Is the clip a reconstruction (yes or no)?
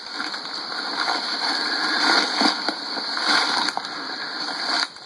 no